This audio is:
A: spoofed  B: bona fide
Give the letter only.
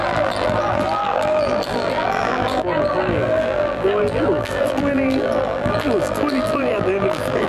A